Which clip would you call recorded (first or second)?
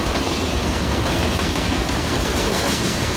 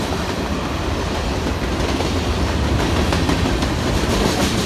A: second